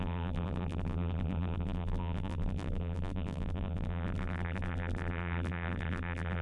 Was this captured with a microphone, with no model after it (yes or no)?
no